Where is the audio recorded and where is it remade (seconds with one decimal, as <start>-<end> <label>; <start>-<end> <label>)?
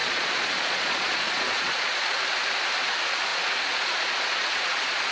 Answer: 0.0-2.3 remade; 2.3-3.3 recorded; 3.3-5.1 remade